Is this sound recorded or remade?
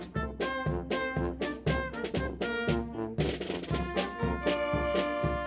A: recorded